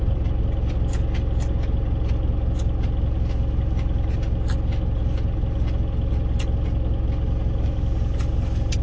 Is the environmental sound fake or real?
real